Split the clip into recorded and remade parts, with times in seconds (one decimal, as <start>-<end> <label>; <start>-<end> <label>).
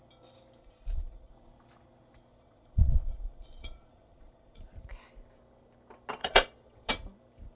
0.0-0.6 recorded; 0.6-1.3 remade; 1.3-2.3 recorded; 2.3-4.8 remade; 4.8-6.2 recorded; 6.2-6.9 remade; 6.9-7.6 recorded